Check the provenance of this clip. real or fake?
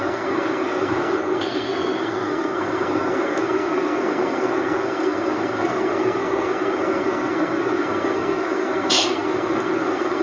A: fake